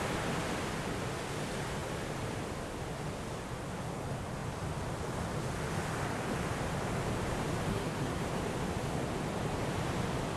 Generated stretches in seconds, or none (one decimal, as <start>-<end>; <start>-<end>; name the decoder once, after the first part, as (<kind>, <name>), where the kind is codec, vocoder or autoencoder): 7.7-8.2 (codec, SNAC)